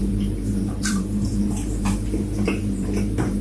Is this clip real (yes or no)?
no